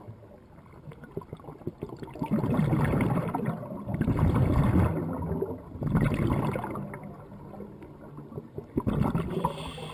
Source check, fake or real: real